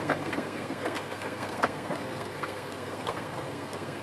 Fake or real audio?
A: fake